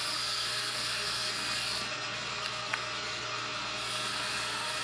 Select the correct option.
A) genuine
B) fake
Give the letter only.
B